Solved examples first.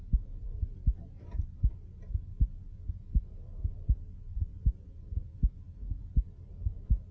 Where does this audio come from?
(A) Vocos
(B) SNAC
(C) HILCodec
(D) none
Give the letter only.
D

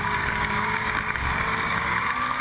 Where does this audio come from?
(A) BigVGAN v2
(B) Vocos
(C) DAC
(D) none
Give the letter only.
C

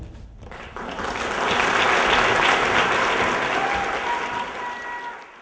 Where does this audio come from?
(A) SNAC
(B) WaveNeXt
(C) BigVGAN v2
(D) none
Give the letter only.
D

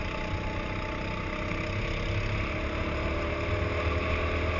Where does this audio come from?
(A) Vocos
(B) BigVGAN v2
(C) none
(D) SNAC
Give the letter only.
C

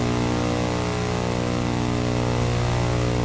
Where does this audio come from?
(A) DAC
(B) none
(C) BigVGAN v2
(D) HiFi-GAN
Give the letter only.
B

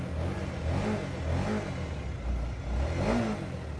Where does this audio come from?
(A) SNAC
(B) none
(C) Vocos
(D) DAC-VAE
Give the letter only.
B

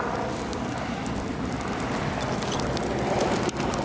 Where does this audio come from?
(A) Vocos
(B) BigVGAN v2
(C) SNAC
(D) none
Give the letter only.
D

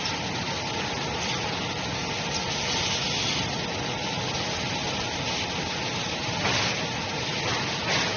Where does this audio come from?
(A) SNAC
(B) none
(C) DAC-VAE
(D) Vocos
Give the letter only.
B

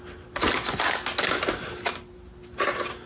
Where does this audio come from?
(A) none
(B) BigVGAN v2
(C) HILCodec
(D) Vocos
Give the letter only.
A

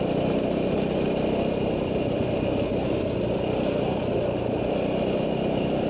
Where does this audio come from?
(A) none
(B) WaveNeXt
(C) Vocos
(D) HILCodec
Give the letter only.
A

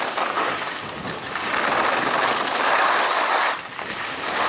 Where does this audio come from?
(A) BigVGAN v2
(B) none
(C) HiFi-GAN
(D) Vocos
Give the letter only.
B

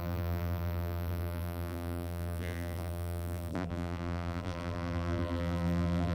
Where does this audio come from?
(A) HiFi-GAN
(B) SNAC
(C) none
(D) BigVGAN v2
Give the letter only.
D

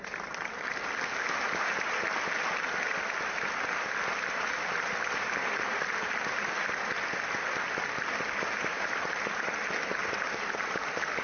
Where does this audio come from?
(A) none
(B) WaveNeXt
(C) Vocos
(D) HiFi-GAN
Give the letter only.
A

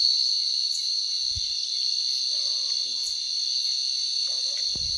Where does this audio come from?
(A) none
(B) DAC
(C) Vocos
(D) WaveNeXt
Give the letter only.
A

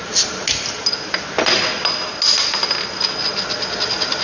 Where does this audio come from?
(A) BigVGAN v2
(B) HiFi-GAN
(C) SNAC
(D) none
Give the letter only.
D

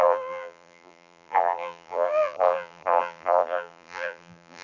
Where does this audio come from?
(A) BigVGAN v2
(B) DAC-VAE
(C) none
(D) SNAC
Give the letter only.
A